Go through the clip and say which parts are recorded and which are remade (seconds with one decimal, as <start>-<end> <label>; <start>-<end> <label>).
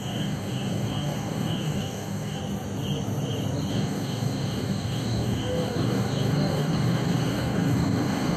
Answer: 0.0-2.4 remade; 2.4-3.7 recorded; 3.7-8.4 remade